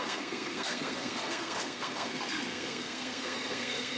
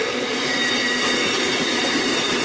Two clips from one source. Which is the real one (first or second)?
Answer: second